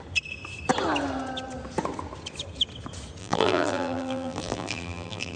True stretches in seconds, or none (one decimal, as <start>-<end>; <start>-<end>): 0.0-3.2

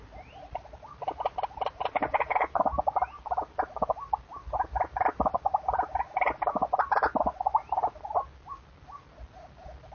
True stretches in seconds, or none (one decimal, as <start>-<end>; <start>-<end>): 0.0-2.0; 2.6-9.9

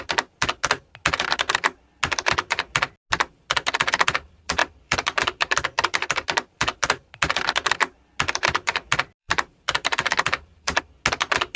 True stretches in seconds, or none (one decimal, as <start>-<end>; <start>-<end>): 0.0-4.6; 7.2-9.2; 10.8-11.6

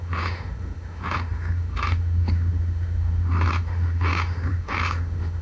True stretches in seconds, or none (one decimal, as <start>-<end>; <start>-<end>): none

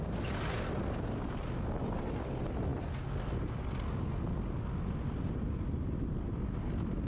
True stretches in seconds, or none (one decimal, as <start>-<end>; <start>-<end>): 0.0-7.1